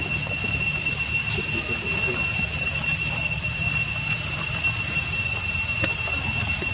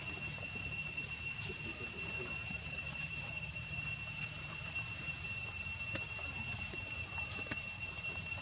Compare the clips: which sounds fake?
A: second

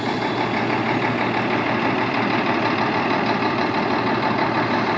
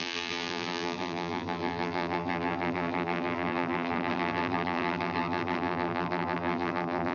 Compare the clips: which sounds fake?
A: second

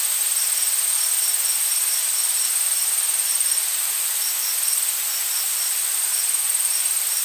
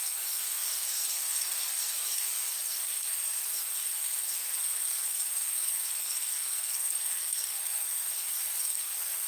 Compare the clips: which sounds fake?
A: second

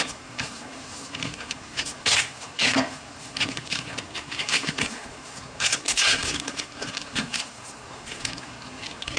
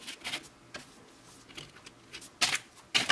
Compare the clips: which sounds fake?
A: first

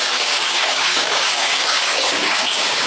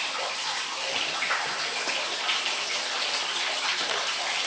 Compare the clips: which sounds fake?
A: first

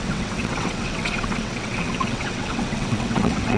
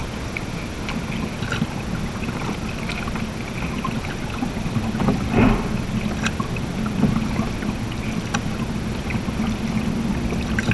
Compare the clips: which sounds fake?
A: first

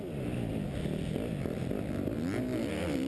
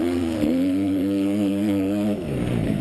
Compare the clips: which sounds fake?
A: second